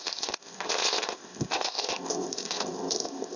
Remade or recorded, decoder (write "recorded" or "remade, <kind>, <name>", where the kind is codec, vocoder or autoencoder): remade, codec, ZipCodec